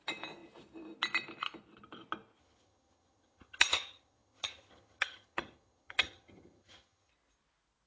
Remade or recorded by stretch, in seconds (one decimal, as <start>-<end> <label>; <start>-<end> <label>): 0.0-2.4 recorded; 2.4-7.1 remade; 7.1-7.9 recorded